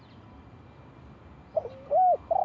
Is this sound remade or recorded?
recorded